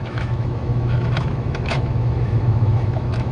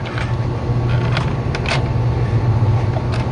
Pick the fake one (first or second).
first